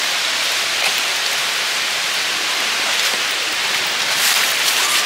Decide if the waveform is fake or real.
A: real